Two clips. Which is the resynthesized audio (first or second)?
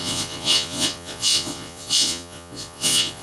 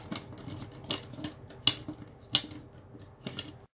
first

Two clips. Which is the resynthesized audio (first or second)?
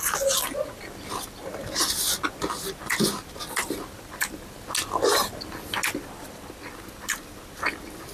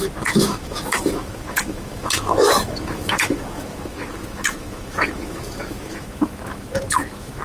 second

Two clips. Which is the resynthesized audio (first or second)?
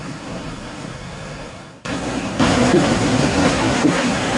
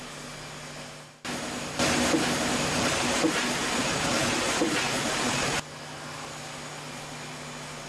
first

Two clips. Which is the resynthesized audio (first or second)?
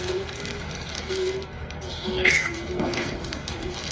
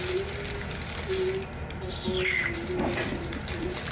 first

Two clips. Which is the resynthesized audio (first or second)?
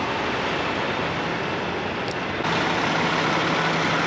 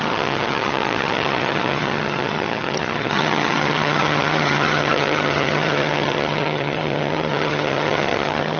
second